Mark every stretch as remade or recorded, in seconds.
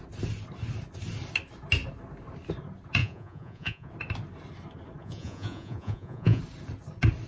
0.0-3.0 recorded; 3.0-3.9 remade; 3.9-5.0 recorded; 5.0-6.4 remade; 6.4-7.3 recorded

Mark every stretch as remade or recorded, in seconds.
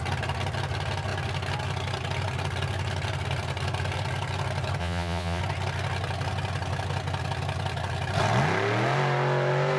0.0-4.8 recorded; 4.8-5.4 remade; 5.4-9.8 recorded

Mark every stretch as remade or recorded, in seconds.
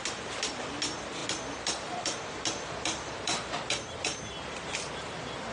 0.0-5.5 recorded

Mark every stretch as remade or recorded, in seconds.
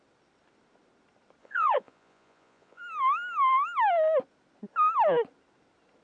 0.0-1.4 recorded; 1.4-2.8 remade; 2.8-6.0 recorded